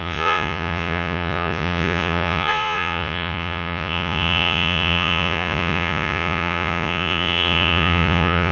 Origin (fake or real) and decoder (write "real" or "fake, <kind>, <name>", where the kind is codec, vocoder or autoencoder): fake, vocoder, Vocos